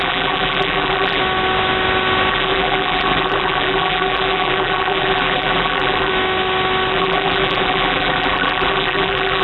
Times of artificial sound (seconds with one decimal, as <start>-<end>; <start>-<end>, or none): 0.0-1.2; 2.3-6.1; 6.9-9.4